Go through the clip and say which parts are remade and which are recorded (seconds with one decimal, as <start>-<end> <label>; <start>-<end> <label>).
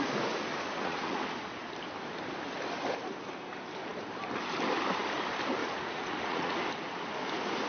0.0-0.5 recorded; 0.5-1.2 remade; 1.2-5.6 recorded; 5.6-6.6 remade; 6.6-7.7 recorded